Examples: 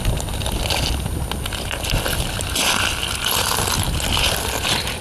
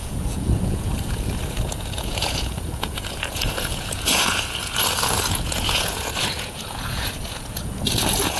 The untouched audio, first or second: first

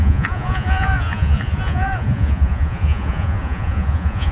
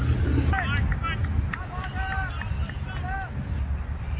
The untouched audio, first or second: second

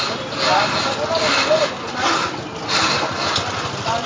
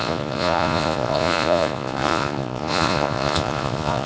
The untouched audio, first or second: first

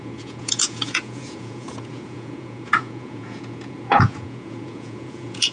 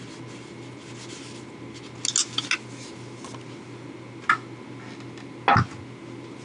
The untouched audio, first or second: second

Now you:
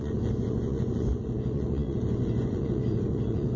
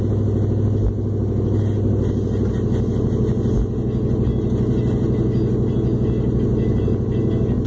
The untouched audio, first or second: second